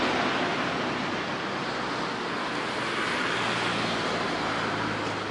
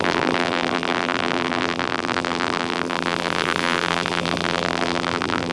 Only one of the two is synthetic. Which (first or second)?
second